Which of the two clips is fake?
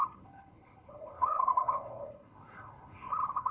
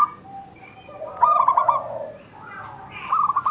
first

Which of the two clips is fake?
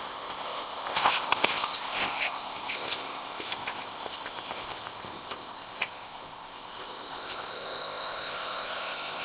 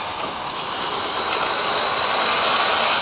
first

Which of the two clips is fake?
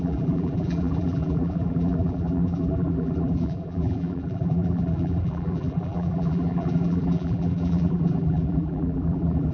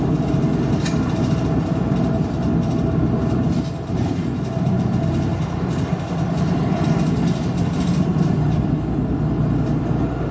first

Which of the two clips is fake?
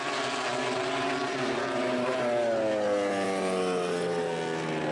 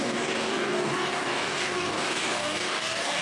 second